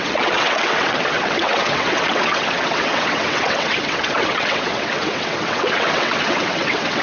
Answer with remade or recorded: remade